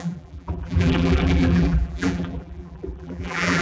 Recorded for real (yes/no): no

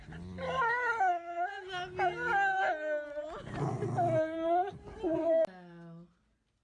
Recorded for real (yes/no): yes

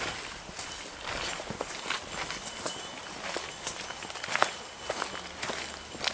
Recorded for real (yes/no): yes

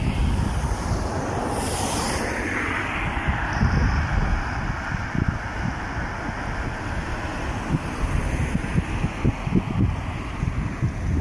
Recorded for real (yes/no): yes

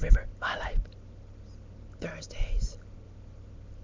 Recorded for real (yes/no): yes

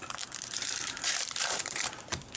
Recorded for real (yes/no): no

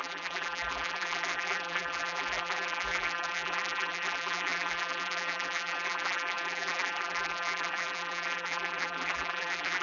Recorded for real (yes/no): no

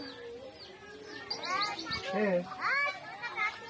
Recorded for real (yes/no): yes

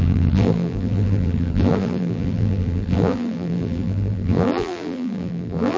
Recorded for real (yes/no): no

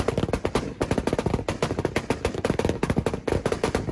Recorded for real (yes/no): yes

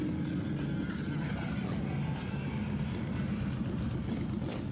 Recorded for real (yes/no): yes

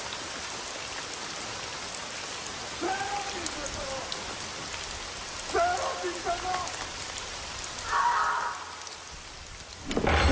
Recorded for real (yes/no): yes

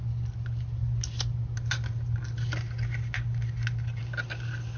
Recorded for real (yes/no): yes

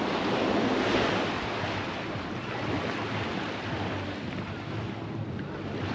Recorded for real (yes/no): yes